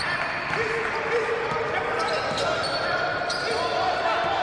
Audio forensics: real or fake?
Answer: real